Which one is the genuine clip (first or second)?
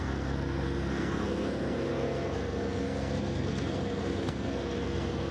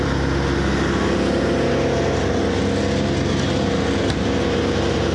second